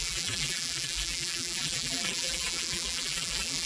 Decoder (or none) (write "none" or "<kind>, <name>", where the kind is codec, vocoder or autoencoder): vocoder, BigVGAN v2